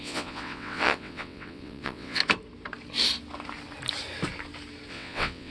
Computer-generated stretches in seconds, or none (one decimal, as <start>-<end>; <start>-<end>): 0.0-2.2; 4.9-5.5